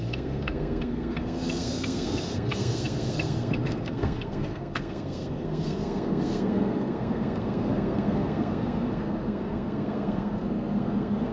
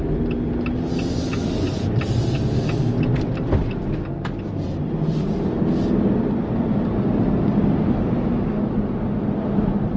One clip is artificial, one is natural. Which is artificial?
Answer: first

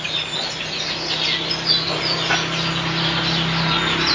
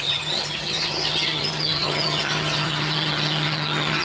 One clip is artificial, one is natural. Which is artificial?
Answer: second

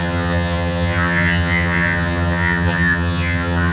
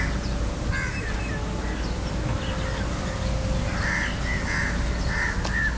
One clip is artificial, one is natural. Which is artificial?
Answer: first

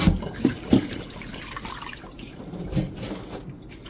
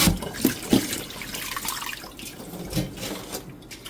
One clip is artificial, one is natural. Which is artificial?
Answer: first